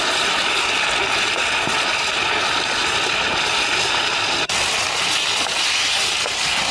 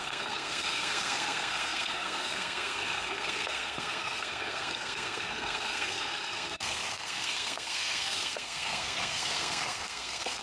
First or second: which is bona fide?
first